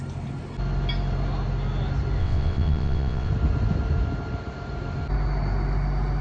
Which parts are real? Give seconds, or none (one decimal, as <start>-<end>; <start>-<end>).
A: 0.0-2.2; 3.3-6.2